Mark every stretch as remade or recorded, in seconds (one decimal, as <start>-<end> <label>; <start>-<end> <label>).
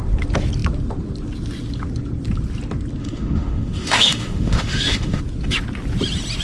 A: 0.0-3.0 recorded; 3.0-5.2 remade; 5.2-6.4 recorded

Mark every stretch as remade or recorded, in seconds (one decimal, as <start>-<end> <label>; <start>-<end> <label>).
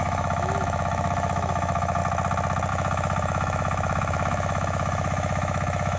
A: 0.0-2.0 remade; 2.0-2.7 recorded; 2.7-6.0 remade